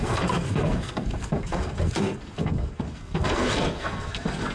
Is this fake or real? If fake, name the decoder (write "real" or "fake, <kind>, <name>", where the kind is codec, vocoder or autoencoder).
fake, codec, SNAC